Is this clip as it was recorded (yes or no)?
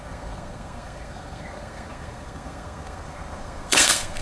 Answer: no